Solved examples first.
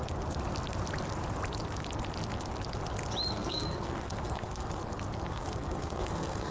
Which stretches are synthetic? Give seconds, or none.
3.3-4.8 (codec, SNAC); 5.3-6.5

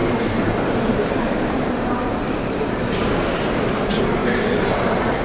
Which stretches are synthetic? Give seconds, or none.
0.0-4.2 (vocoder, BigVGAN v2); 4.7-5.2

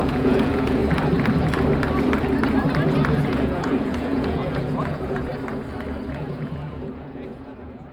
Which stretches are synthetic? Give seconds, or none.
0.0-0.8 (vocoder, Vocos); 3.1-5.3; 6.1-7.9

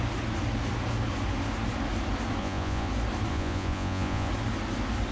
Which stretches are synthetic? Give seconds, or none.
2.4-2.9 (vocoder, Vocos); 3.3-4.3

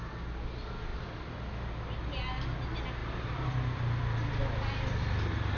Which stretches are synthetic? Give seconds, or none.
none